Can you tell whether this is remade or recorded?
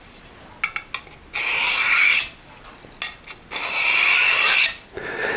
recorded